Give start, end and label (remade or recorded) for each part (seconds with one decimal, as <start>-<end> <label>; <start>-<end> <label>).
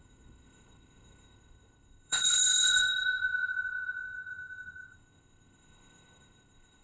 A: 0.0-6.8 remade